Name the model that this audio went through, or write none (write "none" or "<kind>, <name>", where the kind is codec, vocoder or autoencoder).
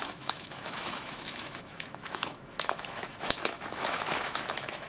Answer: autoencoder, DAC-VAE